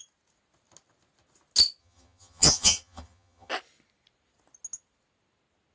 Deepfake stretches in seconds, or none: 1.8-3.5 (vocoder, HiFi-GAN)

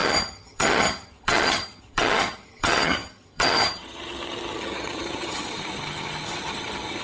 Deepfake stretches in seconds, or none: 0.0-7.0 (vocoder, HiFi-GAN)

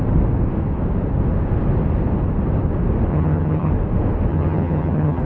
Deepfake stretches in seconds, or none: 3.1-3.7 (vocoder, HiFi-GAN); 4.3-5.2

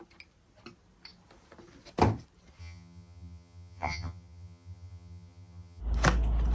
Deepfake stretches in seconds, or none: 2.6-5.8 (vocoder, HiFi-GAN)